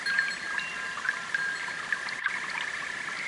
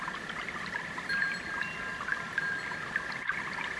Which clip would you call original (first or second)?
second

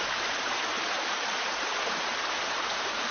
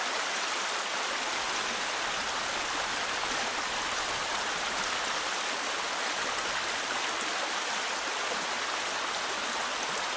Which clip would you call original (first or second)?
second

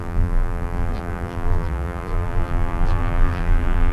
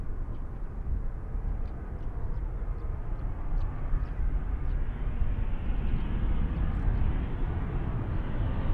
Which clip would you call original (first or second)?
second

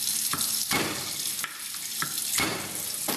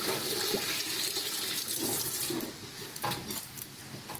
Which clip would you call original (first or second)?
first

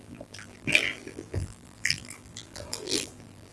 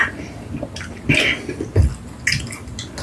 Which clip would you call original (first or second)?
second